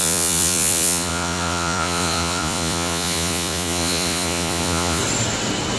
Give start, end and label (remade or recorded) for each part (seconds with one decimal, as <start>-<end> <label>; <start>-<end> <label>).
0.0-5.0 remade; 5.0-5.8 recorded